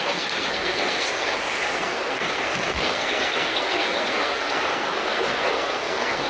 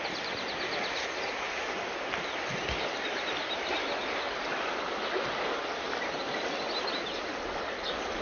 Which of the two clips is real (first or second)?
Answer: second